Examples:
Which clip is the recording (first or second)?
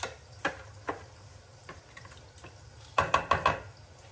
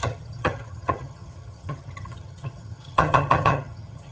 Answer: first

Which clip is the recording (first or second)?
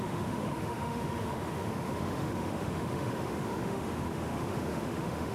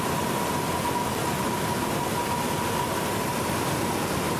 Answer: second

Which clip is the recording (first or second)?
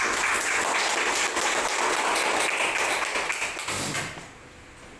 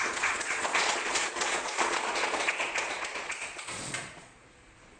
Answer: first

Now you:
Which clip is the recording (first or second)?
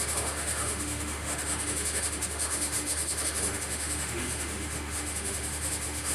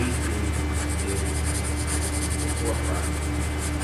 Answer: second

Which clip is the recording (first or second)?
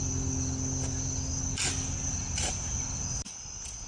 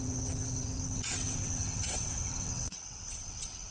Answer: first